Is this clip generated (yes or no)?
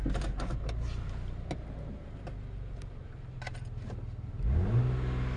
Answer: no